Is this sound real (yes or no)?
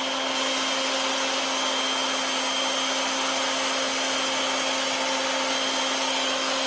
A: yes